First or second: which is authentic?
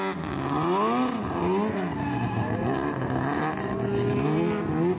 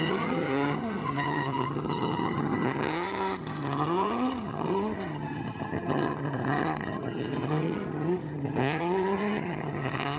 first